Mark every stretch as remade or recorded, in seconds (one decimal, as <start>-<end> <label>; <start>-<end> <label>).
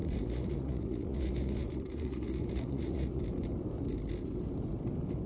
0.0-3.2 remade; 3.2-5.3 recorded